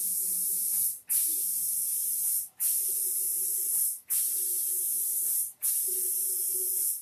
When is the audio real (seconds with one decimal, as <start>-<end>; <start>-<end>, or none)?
0.0-5.1; 5.7-6.2